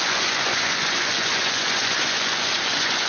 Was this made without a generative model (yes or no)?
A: no